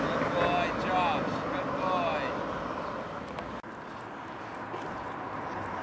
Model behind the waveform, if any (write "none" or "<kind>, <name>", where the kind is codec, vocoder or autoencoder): none